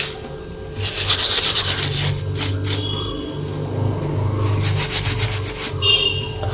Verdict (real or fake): real